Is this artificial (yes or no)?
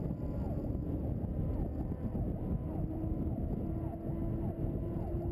no